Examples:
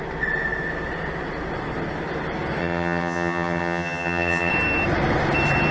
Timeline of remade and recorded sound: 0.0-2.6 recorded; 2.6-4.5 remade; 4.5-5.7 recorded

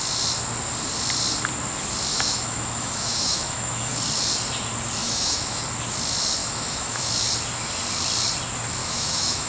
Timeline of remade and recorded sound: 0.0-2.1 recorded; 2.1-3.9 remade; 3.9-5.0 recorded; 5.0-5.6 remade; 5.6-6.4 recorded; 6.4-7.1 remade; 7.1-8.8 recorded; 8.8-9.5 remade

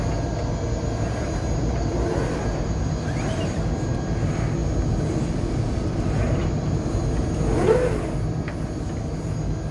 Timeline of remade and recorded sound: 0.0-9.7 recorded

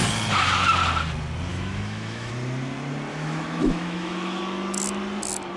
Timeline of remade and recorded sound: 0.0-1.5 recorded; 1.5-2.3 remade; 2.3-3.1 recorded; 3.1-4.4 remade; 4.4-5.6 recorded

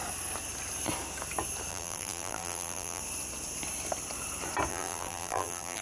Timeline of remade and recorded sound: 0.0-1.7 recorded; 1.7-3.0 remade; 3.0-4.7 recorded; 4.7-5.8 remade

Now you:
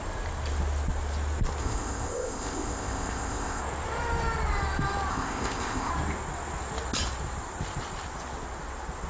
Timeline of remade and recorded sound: 0.0-1.6 recorded; 1.6-3.6 remade; 3.6-5.1 recorded; 5.1-5.9 remade; 5.9-9.1 recorded

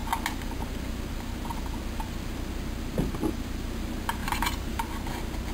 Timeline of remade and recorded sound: 0.0-4.2 recorded; 4.2-4.8 remade; 4.8-5.5 recorded